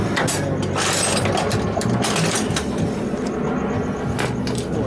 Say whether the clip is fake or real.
real